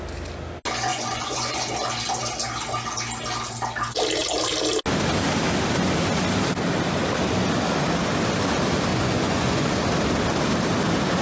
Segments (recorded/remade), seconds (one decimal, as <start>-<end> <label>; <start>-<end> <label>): 0.0-0.9 recorded; 0.9-1.7 remade; 1.7-8.9 recorded; 8.9-9.8 remade; 9.8-11.2 recorded